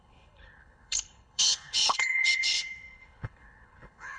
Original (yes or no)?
no